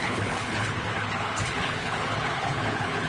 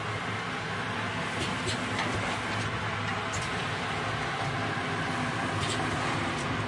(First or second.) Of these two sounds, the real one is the second